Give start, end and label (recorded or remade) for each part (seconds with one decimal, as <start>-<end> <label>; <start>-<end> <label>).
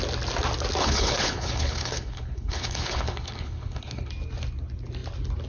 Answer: 0.0-0.8 recorded; 0.8-4.1 remade; 4.1-5.5 recorded